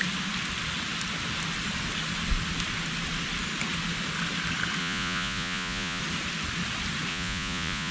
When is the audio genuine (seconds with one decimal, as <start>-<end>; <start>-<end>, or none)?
0.0-4.8; 6.0-7.1